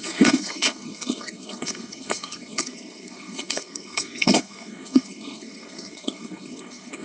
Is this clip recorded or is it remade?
remade